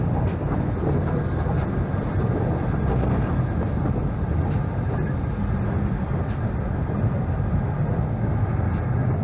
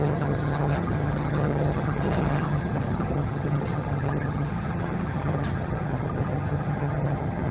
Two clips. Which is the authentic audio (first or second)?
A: first